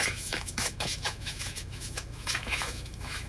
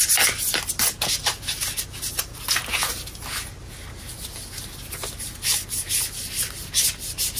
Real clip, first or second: second